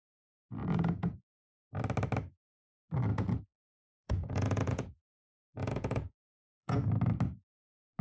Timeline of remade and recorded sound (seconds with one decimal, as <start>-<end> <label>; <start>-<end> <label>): 0.0-0.6 recorded; 0.6-1.5 remade; 1.5-3.1 recorded; 3.1-6.9 remade; 6.9-8.0 recorded